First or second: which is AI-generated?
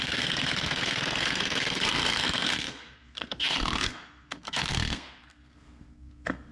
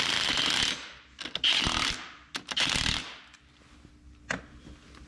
first